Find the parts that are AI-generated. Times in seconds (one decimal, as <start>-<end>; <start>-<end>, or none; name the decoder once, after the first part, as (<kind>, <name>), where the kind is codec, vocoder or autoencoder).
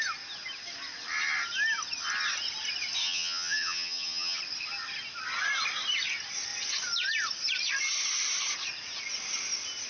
3.0-4.4 (vocoder, HiFi-GAN)